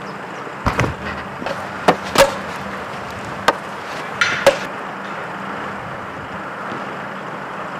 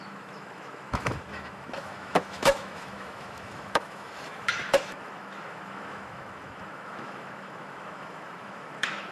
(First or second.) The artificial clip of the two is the second